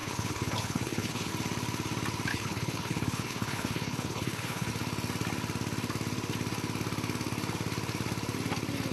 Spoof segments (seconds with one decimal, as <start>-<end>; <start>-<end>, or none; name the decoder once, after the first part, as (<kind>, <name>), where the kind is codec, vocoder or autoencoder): 0.0-1.3 (codec, HILCodec); 2.3-4.7